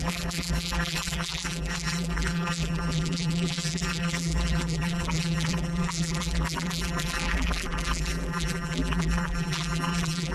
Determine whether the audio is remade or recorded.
remade